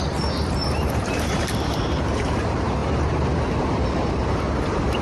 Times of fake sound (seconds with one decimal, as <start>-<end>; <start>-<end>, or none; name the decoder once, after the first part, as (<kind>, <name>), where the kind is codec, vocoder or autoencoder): 0.0-5.0 (vocoder, BigVGAN v2)